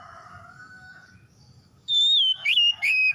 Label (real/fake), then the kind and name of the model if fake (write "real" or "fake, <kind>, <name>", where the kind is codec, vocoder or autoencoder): fake, codec, DAC